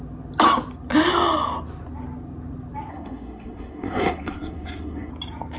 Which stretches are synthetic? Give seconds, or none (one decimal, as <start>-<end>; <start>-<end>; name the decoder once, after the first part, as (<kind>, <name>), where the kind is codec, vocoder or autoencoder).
2.9-5.1 (codec, SNAC)